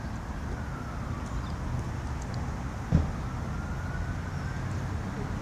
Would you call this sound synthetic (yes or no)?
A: no